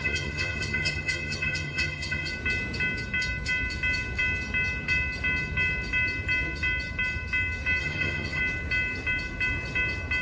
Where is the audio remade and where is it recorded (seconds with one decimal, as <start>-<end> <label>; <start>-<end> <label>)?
0.0-2.3 remade; 2.3-7.8 recorded; 7.8-8.4 remade; 8.4-10.2 recorded